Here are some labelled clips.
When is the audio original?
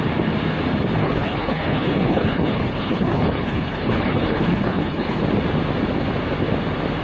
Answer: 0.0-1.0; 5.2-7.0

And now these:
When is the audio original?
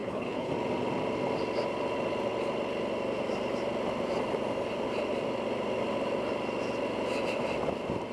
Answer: 0.5-8.1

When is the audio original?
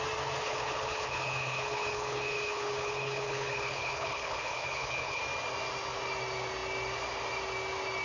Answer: 0.0-0.4; 5.2-8.0